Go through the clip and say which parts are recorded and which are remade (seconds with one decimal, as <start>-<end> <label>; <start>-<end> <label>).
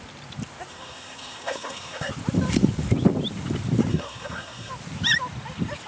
0.0-0.7 recorded; 0.7-2.1 remade; 2.1-3.9 recorded; 3.9-4.7 remade; 4.7-5.9 recorded